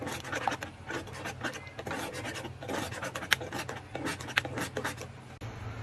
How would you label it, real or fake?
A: real